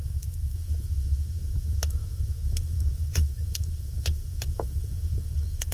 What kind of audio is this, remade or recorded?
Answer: remade